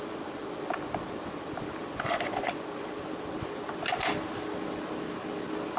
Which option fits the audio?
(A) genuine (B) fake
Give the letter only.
A